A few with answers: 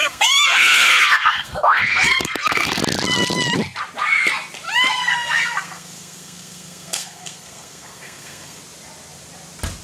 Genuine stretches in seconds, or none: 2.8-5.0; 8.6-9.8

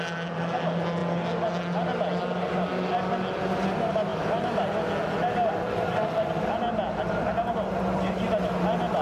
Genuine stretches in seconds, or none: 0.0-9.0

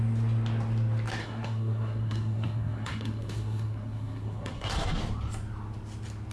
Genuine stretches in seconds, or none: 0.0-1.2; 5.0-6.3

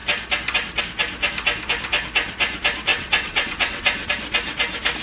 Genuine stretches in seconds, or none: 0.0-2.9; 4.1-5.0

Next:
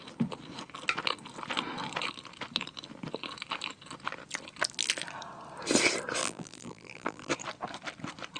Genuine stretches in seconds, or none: 0.0-6.2; 7.3-8.4

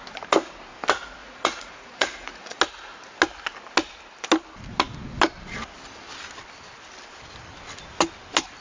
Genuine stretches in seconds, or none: 0.0-1.2; 2.6-8.6